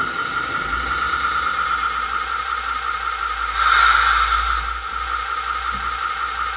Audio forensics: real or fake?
real